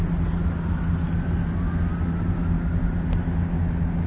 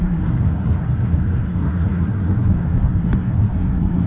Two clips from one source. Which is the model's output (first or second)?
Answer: second